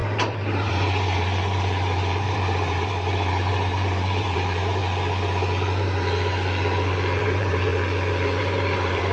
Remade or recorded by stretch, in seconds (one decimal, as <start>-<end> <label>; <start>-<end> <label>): 0.0-4.8 remade; 4.8-7.2 recorded; 7.2-7.7 remade; 7.7-8.4 recorded; 8.4-9.1 remade